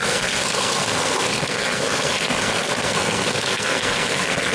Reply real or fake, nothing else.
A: fake